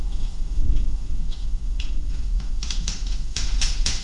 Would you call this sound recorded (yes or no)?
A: no